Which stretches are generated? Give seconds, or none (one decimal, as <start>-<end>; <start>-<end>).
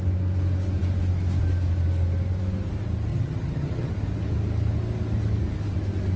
3.1-3.9